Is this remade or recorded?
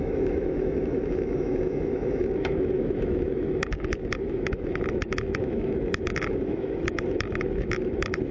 remade